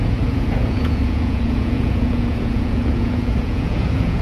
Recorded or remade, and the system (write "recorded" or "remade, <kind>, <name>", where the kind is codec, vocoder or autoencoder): remade, vocoder, Vocos